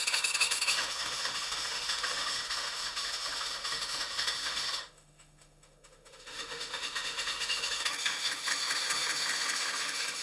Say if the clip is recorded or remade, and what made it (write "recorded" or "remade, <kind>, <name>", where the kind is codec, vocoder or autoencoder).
remade, autoencoder, DAC-VAE